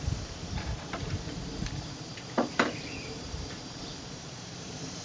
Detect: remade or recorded remade